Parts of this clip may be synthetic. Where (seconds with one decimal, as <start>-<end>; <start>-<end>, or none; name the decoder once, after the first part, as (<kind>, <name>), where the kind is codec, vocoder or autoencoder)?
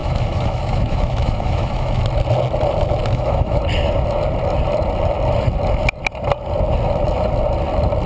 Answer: 0.0-2.0 (autoencoder, DAC-VAE); 3.0-3.6